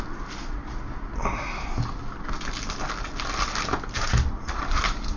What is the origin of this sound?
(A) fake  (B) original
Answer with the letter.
B